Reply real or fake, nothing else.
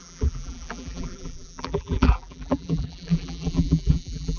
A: fake